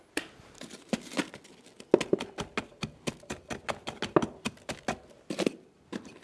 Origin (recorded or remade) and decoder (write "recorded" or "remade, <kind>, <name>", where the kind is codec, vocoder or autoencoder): recorded